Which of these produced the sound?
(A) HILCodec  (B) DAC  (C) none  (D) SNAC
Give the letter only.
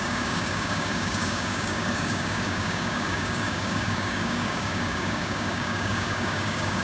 B